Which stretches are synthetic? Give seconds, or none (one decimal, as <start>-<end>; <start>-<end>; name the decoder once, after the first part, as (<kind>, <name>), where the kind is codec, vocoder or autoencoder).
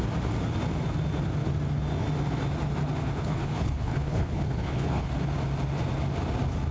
3.0-5.1 (codec, HILCodec)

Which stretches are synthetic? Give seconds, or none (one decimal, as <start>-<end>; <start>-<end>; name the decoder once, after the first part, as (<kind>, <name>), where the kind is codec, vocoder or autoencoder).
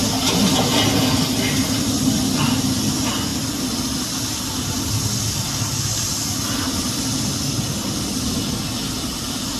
none